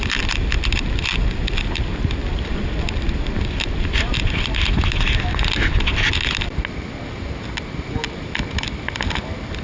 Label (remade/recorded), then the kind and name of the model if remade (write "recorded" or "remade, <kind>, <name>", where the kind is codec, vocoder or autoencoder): recorded